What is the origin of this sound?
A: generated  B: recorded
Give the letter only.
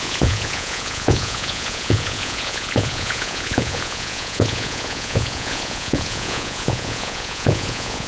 A